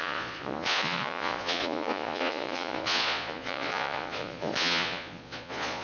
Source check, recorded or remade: remade